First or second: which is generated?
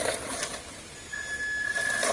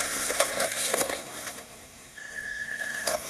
second